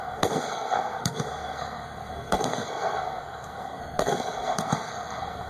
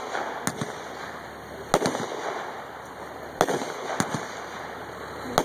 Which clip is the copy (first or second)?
first